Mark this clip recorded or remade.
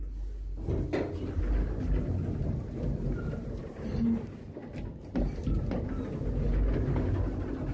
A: recorded